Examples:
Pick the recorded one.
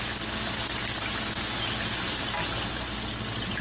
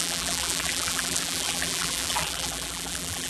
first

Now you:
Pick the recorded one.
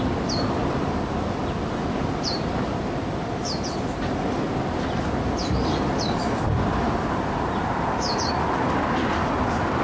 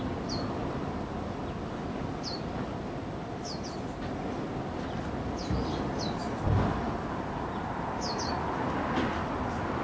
second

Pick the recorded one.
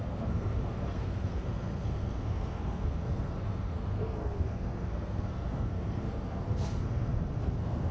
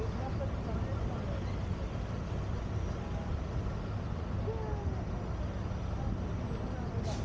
second